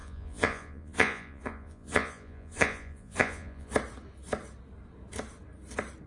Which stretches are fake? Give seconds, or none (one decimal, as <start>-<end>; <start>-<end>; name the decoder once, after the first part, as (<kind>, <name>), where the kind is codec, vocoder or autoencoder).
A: 0.0-3.7 (vocoder, Vocos)